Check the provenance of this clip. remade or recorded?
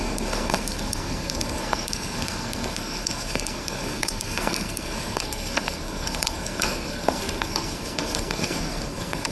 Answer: remade